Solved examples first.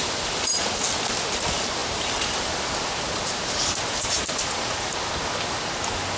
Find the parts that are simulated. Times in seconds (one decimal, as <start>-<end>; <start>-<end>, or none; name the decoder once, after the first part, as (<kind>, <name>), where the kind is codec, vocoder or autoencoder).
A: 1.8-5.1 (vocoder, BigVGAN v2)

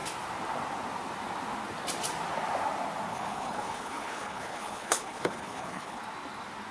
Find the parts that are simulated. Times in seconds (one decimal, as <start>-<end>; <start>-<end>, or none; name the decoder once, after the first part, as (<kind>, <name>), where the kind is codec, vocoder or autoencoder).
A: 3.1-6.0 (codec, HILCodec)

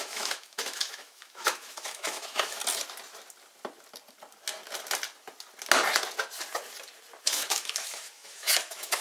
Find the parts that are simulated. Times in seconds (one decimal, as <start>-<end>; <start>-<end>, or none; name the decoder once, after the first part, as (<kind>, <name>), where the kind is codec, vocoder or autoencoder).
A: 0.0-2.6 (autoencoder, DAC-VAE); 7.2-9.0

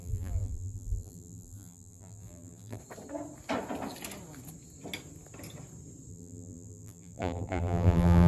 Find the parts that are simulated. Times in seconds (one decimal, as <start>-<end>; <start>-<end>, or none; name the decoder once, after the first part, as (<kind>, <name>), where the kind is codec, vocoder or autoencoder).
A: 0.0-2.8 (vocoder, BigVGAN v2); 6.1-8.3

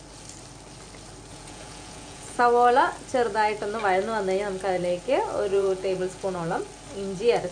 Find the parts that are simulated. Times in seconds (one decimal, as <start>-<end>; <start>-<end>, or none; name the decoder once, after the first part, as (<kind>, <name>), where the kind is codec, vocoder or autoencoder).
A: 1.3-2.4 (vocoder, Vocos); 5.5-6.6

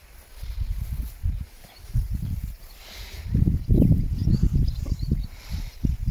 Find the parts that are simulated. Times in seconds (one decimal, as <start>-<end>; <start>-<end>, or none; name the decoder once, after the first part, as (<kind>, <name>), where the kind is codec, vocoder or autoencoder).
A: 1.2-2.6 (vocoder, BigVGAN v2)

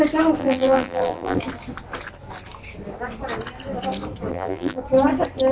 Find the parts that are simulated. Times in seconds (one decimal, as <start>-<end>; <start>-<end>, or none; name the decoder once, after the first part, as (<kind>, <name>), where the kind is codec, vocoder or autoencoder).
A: 0.4-1.4 (vocoder, BigVGAN v2); 4.3-4.8

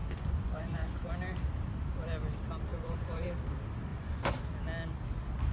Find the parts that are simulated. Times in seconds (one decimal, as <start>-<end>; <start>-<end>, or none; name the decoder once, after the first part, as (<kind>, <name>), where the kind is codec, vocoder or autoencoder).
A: 0.0-1.1 (vocoder, Vocos); 2.7-3.3; 3.9-4.4